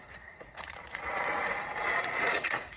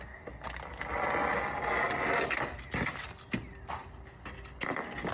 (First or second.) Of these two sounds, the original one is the second